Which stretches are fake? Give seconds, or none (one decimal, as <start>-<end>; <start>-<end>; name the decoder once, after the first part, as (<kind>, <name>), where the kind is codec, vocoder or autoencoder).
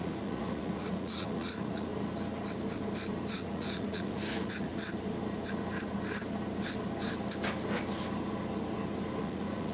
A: 0.0-1.9 (vocoder, Vocos); 3.3-4.7; 9.2-9.7